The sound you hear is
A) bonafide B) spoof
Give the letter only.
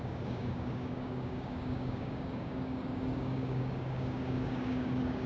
B